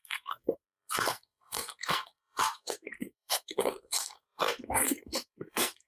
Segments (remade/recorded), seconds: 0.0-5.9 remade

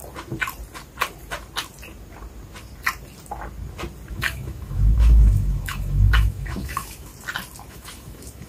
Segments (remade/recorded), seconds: 0.0-4.1 recorded; 4.1-7.1 remade; 7.1-7.7 recorded; 7.7-8.5 remade

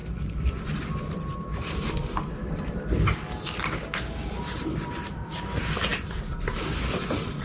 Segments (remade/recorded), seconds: 0.0-7.4 recorded

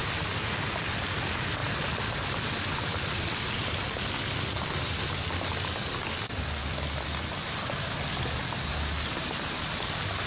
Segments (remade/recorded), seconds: 0.0-1.2 remade; 1.2-1.6 recorded; 1.6-3.5 remade; 3.5-6.6 recorded; 6.6-8.0 remade; 8.0-10.3 recorded

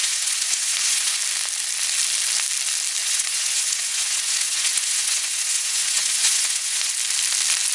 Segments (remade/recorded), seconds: 0.0-1.2 remade; 1.2-3.0 recorded; 3.0-6.9 remade; 6.9-7.7 recorded

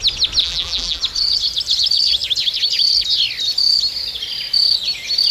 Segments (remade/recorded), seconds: 0.0-0.4 recorded; 0.4-1.0 remade; 1.0-5.3 recorded

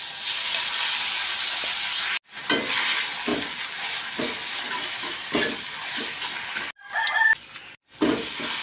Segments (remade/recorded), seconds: 0.0-8.6 recorded